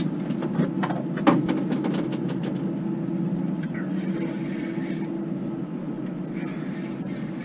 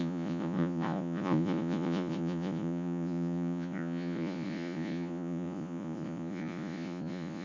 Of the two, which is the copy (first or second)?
second